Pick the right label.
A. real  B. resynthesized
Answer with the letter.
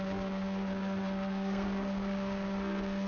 B